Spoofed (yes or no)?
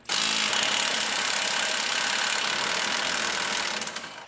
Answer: no